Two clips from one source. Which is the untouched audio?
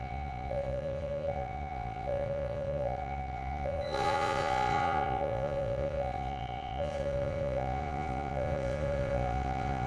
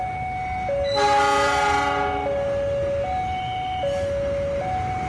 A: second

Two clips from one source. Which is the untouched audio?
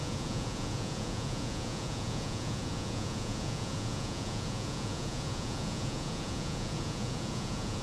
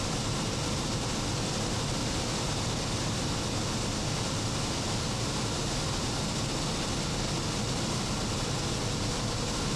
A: second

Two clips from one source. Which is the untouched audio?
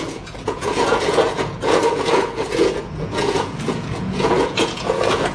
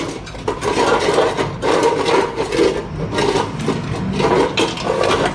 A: second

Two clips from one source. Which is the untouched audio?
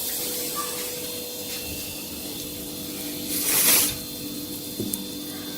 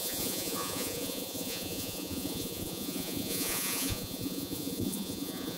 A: first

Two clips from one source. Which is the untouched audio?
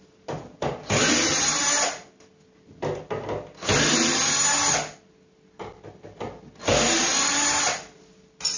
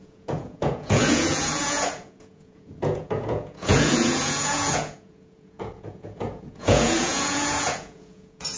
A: first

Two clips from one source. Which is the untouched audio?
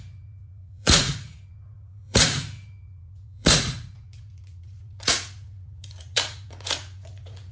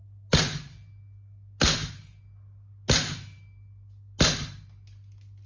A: second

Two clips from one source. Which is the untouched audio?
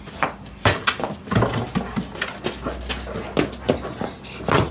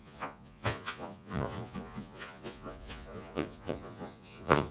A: first